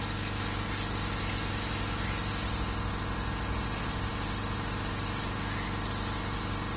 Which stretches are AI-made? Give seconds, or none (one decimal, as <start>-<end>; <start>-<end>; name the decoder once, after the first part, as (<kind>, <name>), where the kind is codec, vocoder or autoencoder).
none